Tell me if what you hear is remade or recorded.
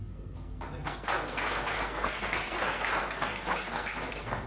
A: remade